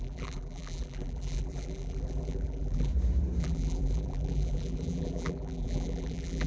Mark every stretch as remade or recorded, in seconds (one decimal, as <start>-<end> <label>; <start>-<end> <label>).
0.0-2.9 remade; 2.9-3.4 recorded; 3.4-6.5 remade